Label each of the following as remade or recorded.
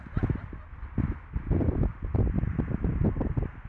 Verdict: recorded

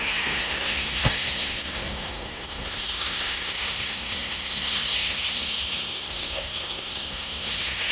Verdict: remade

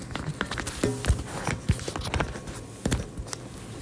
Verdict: recorded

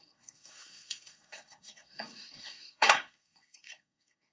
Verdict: remade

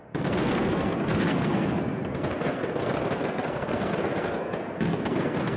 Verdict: remade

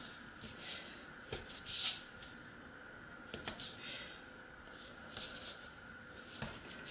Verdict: recorded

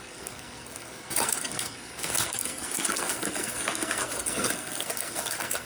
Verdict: remade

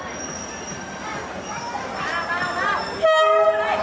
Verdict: recorded